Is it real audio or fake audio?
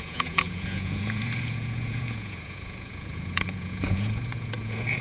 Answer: fake